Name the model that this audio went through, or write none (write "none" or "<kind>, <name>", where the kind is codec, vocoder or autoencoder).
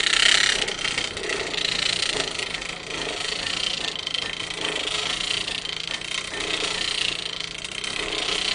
none